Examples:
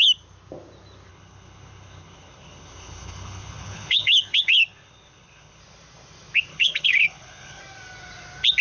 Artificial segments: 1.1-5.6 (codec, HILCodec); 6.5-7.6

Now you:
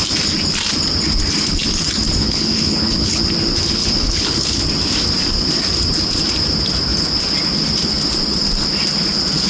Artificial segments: 2.2-3.2 (codec, HILCodec); 3.8-4.6

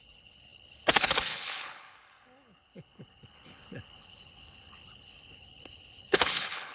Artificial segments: 0.0-6.7 (codec, HILCodec)

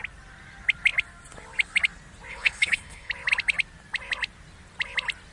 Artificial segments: 2.3-3.1 (codec, HILCodec)

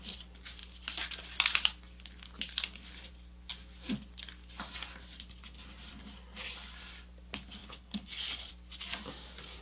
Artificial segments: 7.6-8.5 (codec, HILCodec)

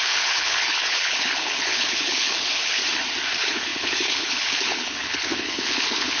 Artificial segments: 0.0-2.8 (codec, HILCodec); 3.3-6.2